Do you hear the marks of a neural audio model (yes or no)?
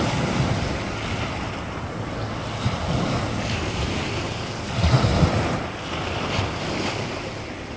no